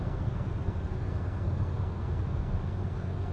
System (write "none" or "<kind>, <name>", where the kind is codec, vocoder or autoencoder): codec, SNAC